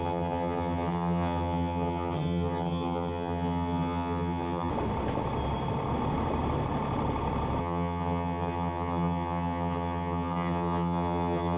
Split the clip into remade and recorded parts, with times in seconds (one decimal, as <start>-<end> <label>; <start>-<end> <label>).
0.0-4.7 remade; 4.7-7.6 recorded; 7.6-11.6 remade